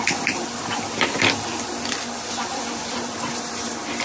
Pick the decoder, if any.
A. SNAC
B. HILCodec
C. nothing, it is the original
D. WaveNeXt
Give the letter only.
C